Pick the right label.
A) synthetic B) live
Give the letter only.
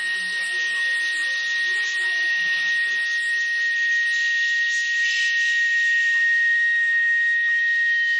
B